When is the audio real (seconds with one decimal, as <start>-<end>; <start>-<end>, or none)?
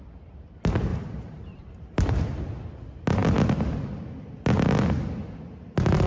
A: 0.0-0.9; 2.2-6.1